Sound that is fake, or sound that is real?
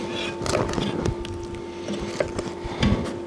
real